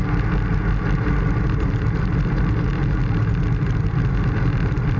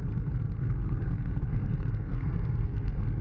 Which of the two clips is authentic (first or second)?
first